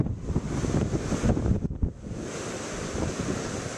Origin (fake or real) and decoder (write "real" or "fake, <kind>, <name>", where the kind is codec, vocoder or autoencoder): real